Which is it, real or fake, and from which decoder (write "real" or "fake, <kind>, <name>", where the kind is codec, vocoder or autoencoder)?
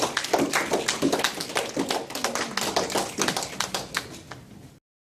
real